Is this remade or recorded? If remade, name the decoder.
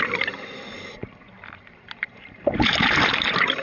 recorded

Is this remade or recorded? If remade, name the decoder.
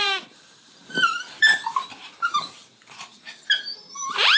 remade, vocoder, BigVGAN v2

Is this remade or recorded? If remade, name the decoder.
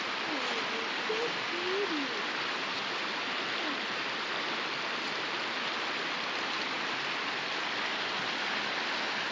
recorded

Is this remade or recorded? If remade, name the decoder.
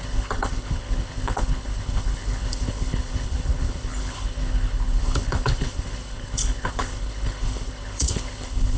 remade, codec, HILCodec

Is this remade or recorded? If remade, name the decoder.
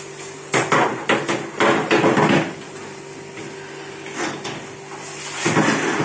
recorded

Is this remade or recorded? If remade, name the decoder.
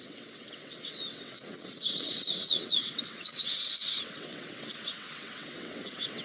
remade, vocoder, WaveNeXt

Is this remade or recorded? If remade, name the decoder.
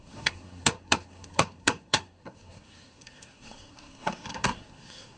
remade, codec, SNAC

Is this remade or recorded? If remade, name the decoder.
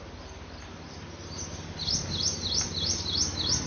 recorded